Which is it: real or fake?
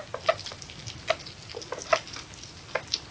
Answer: real